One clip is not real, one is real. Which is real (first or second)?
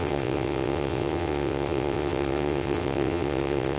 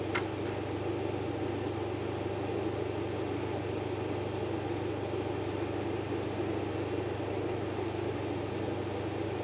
second